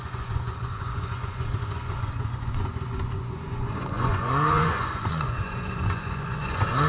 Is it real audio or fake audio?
fake